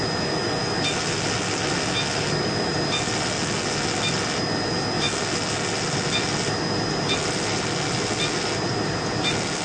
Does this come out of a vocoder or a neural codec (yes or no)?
no